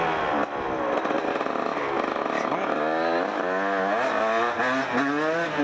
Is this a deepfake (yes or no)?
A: no